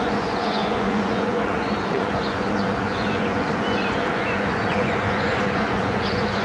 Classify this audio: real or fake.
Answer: fake